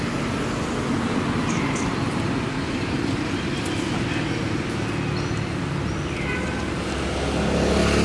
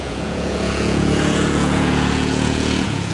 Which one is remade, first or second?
second